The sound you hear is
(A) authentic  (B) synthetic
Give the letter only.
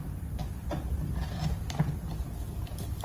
A